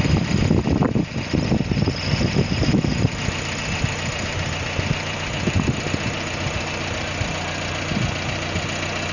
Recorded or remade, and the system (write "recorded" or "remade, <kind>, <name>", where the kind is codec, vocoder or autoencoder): recorded